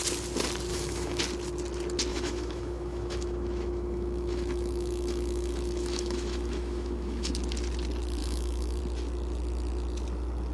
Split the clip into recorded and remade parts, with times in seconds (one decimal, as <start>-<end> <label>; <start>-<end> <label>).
0.0-0.7 recorded; 0.7-1.2 remade; 1.2-2.1 recorded; 2.1-7.3 remade; 7.3-8.2 recorded; 8.2-8.8 remade; 8.8-10.5 recorded